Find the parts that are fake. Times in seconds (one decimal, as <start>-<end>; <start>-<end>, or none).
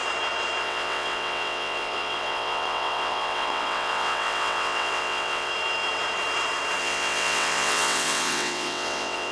0.6-5.5; 6.8-9.3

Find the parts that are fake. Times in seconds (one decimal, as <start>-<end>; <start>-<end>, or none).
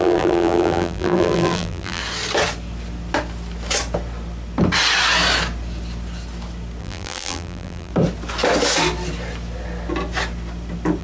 0.0-2.0; 6.8-7.9